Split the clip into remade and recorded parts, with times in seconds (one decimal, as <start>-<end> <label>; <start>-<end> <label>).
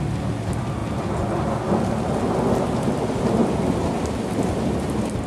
0.0-3.4 recorded; 3.4-4.1 remade; 4.1-5.3 recorded